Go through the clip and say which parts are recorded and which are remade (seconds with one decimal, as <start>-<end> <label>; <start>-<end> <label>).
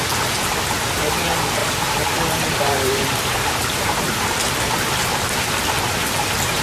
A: 0.0-1.6 recorded; 1.6-4.0 remade; 4.0-6.6 recorded